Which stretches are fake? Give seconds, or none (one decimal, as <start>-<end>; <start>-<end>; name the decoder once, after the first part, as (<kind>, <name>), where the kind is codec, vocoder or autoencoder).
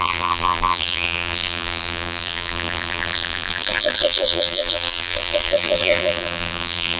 0.0-7.0 (vocoder, BigVGAN v2)